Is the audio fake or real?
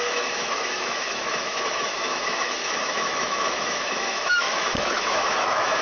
fake